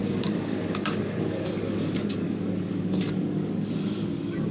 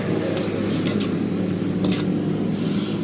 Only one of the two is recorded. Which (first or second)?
second